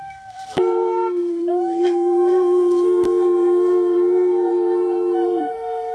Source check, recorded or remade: remade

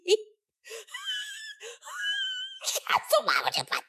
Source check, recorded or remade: remade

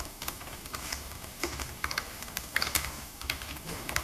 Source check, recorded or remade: remade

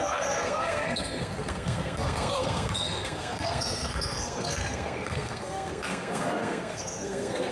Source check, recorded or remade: remade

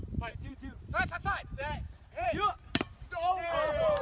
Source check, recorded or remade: remade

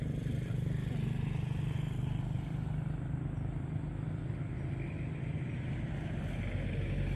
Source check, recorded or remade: recorded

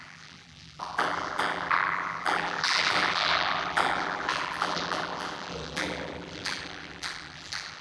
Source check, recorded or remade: remade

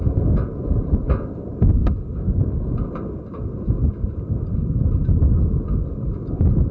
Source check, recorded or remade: recorded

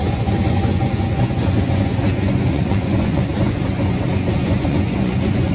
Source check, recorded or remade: remade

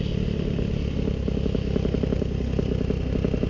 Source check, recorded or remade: recorded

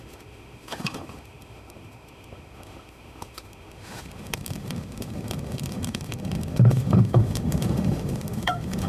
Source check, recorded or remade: remade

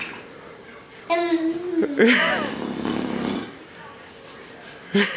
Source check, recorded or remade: recorded